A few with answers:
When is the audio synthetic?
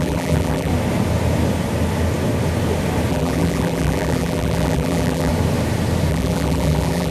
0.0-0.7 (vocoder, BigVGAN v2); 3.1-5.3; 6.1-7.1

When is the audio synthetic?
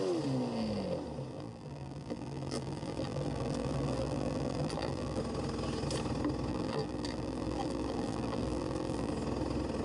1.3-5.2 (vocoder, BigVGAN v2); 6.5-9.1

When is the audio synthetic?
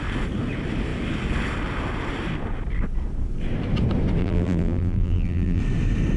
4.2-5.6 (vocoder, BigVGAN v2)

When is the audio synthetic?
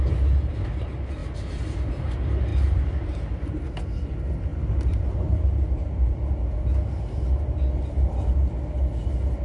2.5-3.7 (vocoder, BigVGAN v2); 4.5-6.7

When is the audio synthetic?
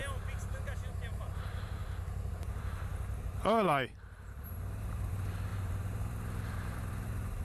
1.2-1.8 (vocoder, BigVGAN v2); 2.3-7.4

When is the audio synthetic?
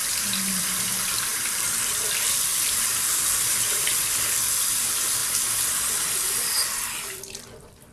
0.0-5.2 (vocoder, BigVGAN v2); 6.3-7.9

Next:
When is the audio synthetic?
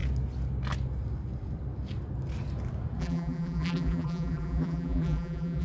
3.0-5.6 (vocoder, BigVGAN v2)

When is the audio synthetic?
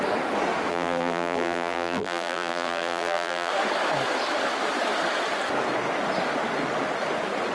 0.7-3.5 (vocoder, BigVGAN v2)